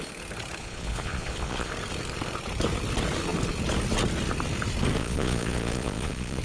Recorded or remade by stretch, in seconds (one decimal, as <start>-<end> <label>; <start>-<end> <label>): 0.0-0.6 recorded; 0.6-1.7 remade; 1.7-5.0 recorded; 5.0-6.4 remade